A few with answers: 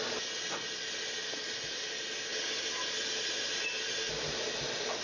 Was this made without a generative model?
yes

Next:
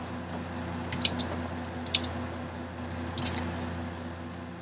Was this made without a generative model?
yes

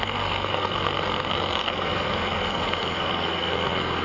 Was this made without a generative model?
no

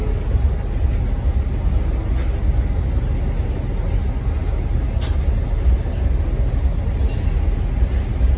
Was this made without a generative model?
yes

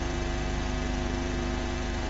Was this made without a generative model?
no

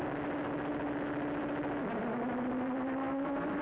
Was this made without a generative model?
yes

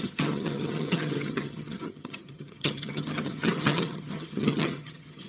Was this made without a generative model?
no